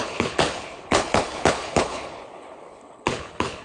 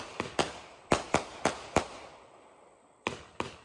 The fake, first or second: first